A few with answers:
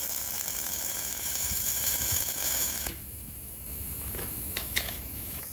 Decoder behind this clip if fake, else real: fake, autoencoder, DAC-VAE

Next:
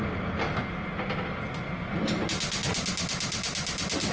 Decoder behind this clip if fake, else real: real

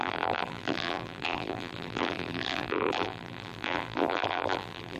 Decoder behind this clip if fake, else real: fake, vocoder, BigVGAN v2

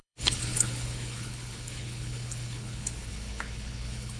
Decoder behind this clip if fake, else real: fake, codec, HILCodec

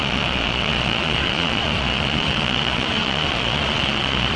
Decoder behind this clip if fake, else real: fake, vocoder, Vocos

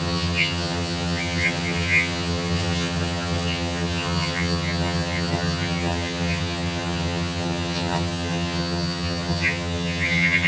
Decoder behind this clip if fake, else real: fake, vocoder, HiFi-GAN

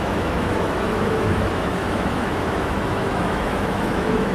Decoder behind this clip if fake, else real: fake, autoencoder, DAC-VAE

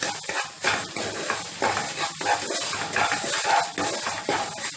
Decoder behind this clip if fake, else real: real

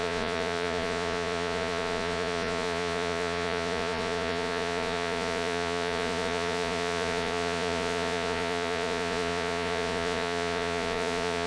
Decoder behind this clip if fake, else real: fake, vocoder, Vocos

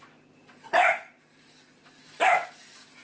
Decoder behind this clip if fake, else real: real